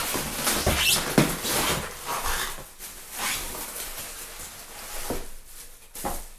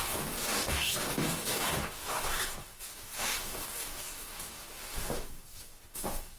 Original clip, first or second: first